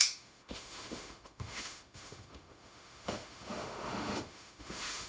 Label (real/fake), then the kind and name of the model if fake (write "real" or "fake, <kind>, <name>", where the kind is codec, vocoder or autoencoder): fake, autoencoder, DAC-VAE